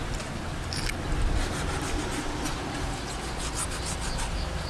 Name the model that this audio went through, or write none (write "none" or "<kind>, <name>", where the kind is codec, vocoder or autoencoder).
none